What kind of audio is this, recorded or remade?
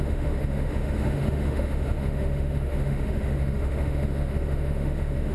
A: remade